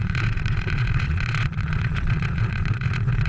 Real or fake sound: fake